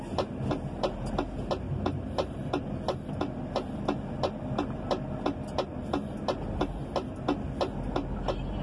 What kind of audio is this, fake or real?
real